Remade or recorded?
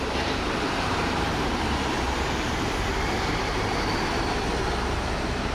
remade